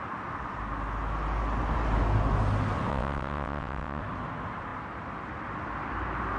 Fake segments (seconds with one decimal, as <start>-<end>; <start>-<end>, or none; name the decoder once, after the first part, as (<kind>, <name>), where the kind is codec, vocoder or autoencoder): 2.9-4.0 (vocoder, WaveNeXt)